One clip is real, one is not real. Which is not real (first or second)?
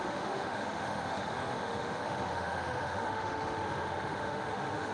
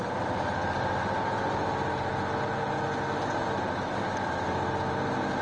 first